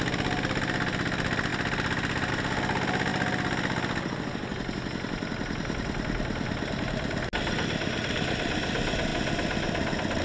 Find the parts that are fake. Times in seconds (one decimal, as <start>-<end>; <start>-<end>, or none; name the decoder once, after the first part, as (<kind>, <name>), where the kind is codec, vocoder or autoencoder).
none